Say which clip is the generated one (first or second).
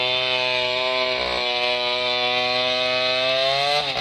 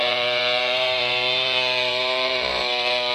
second